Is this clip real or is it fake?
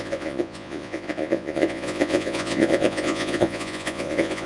fake